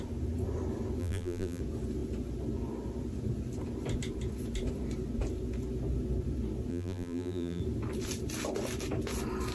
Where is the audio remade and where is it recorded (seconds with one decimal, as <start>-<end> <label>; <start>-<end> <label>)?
0.0-1.0 recorded; 1.0-1.6 remade; 1.6-6.7 recorded; 6.7-7.6 remade; 7.6-9.5 recorded